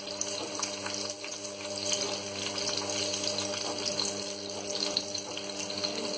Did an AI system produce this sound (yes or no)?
no